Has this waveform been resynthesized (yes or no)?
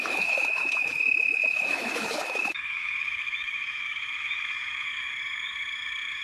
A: yes